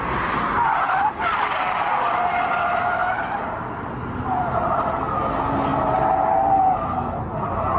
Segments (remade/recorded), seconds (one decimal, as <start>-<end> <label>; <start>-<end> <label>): 0.0-7.8 recorded